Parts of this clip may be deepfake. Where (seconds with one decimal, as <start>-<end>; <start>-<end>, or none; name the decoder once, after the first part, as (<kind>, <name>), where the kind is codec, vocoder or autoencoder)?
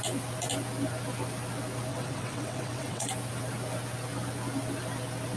1.9-3.1 (vocoder, WaveNeXt)